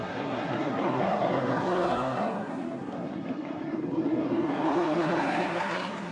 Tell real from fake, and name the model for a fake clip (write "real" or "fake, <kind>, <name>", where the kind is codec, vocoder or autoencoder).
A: fake, codec, SNAC